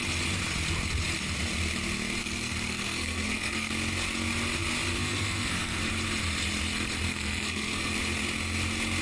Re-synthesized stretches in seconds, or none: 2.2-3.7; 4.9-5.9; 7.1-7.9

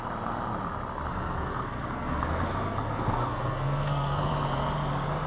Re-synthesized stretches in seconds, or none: 1.1-4.3